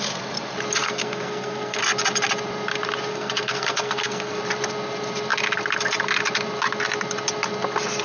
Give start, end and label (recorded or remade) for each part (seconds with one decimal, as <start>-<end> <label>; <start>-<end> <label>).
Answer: 0.0-0.8 recorded; 0.8-1.8 remade; 1.8-3.1 recorded; 3.1-4.4 remade; 4.4-8.0 recorded